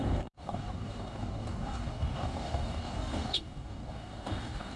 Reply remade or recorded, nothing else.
remade